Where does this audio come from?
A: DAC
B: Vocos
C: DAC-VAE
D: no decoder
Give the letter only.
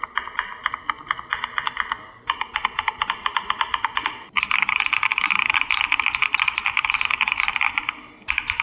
D